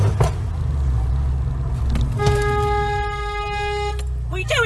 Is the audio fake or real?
real